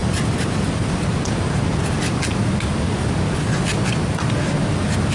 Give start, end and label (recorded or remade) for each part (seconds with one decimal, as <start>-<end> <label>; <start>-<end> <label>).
0.0-0.8 remade; 0.8-5.1 recorded